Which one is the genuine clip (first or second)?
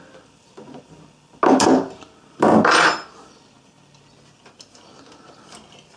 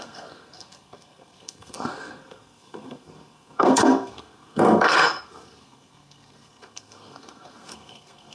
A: first